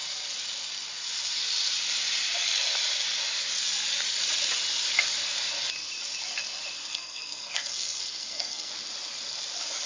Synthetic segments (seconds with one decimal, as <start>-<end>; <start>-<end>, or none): 6.9-8.7